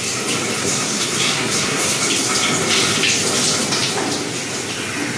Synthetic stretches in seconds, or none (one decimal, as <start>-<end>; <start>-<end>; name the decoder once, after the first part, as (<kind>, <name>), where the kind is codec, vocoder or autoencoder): 0.6-2.0 (codec, SNAC)